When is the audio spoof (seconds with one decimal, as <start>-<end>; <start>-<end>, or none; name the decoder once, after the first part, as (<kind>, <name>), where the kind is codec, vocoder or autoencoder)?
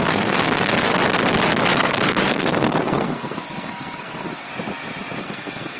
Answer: 0.0-0.9 (codec, SNAC); 1.7-4.5; 5.2-5.8